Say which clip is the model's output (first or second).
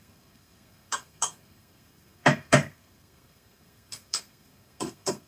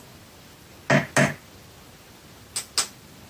first